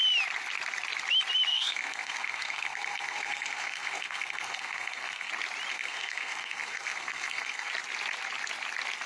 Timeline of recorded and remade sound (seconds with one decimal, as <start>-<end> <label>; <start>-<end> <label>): 0.0-1.5 recorded; 1.5-5.3 remade; 5.3-5.7 recorded; 5.7-7.7 remade; 7.7-9.1 recorded